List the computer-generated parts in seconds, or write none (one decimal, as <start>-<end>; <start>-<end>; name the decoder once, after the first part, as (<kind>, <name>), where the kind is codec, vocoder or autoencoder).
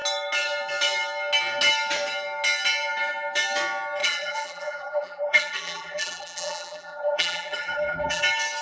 4.0-8.2 (vocoder, BigVGAN v2)